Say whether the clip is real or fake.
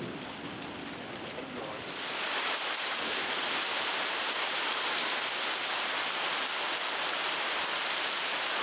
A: real